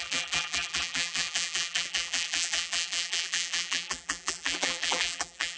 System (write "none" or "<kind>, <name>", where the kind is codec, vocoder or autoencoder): vocoder, BigVGAN v2